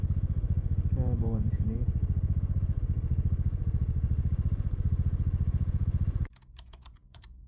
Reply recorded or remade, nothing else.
remade